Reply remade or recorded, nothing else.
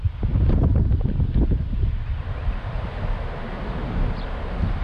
recorded